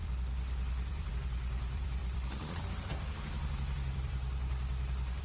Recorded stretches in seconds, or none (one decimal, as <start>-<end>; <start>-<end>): none

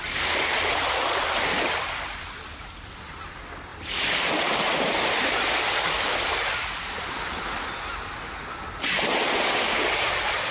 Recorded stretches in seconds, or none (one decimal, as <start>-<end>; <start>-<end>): 0.0-2.5; 3.3-3.7; 6.1-10.5